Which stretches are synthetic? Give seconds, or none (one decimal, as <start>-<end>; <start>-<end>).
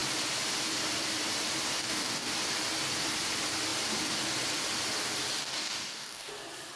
1.8-2.3; 5.4-6.3